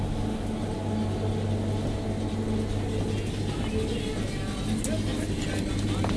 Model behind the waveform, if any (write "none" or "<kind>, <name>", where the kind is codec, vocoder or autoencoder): none